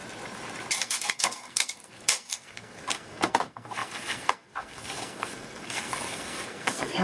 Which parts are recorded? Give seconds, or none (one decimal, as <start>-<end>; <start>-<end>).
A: 0.0-0.8